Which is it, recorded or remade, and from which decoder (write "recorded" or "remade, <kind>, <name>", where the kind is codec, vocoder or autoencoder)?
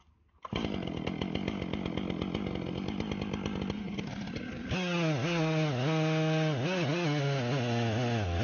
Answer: recorded